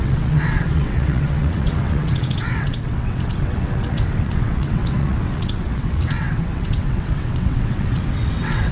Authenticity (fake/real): fake